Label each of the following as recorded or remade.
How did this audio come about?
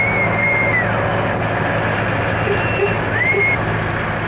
recorded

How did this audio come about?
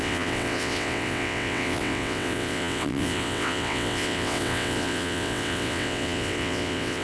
remade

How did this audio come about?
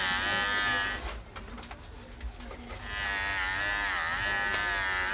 recorded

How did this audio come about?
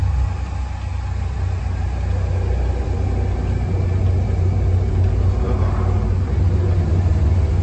recorded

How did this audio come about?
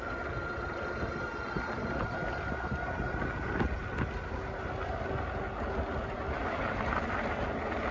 recorded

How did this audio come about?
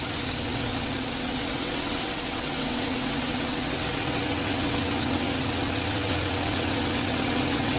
remade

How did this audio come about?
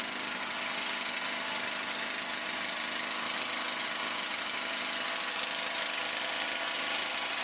recorded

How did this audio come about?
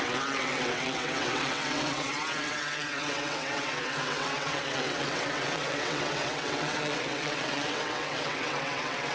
remade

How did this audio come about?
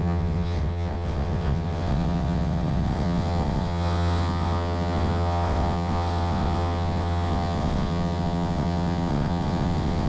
remade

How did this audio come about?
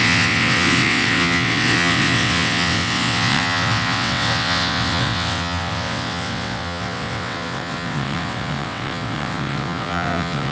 remade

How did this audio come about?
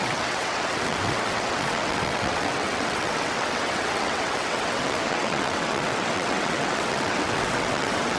remade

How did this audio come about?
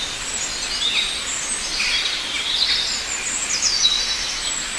recorded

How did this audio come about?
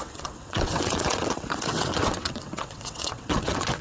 remade